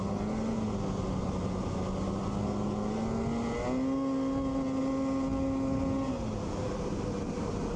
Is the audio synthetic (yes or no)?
no